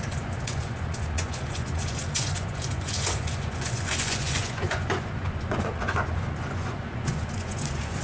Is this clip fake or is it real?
fake